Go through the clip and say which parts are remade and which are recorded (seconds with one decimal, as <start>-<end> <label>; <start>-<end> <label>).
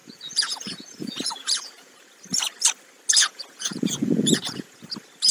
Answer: 0.0-2.1 remade; 2.1-3.2 recorded; 3.2-4.8 remade; 4.8-5.3 recorded